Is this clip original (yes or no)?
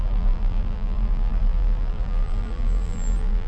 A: no